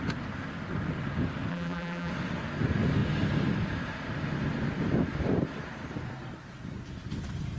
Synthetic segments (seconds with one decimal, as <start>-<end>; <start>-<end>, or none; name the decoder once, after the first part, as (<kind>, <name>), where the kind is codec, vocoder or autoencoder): 1.5-2.1 (vocoder, BigVGAN v2)